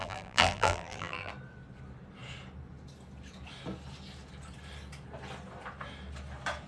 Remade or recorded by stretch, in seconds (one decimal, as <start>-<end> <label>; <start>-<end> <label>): 0.0-1.3 remade; 1.3-6.7 recorded